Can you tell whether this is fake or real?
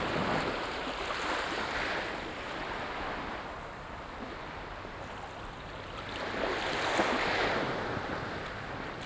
real